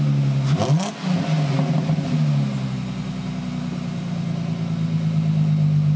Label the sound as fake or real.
real